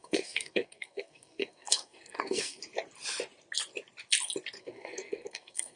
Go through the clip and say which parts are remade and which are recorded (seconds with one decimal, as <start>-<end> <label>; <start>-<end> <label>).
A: 0.0-2.6 remade; 2.6-4.6 recorded; 4.6-5.8 remade